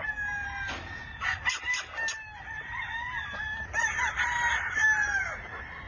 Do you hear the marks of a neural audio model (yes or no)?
no